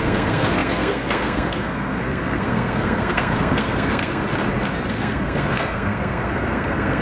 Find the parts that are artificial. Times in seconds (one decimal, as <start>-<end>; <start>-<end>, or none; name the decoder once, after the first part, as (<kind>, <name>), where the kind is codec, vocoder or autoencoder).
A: 0.0-4.2 (codec, SNAC); 4.9-7.0